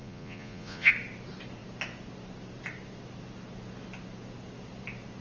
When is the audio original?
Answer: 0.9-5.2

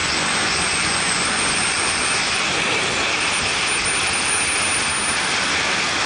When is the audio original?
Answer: 2.4-6.1

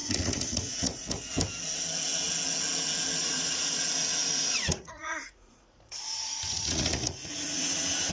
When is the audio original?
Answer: 1.3-3.2; 3.8-4.2

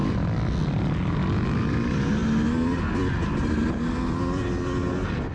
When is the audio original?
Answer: 0.0-5.3

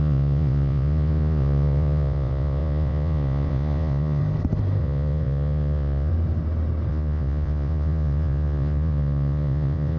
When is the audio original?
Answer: 4.2-4.8; 6.1-6.9